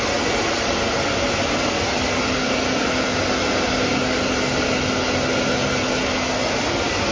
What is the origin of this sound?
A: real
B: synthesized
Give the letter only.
A